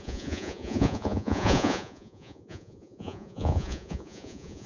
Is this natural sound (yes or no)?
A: no